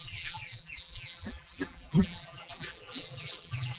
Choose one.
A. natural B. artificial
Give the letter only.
B